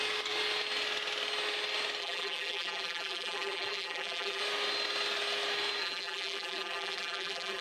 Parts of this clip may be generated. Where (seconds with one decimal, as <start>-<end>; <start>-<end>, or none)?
2.0-4.4; 5.8-7.6